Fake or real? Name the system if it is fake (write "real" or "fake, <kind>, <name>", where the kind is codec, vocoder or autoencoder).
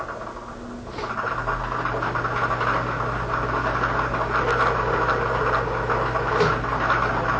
real